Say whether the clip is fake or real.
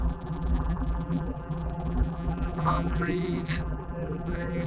fake